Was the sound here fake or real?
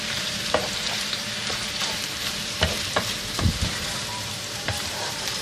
fake